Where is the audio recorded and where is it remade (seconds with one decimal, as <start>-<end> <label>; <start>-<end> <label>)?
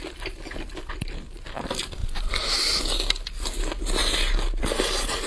0.0-5.3 recorded